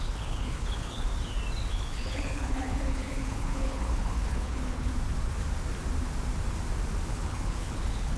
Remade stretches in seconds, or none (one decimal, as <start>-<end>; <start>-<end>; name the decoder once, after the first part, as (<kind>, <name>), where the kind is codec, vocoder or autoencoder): 0.0-1.1 (codec, HILCodec); 1.7-4.9; 7.1-8.2